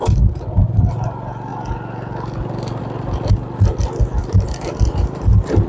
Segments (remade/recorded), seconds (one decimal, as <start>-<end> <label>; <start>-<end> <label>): 0.0-4.2 recorded; 4.2-5.7 remade